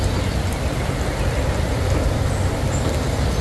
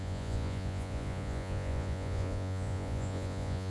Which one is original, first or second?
first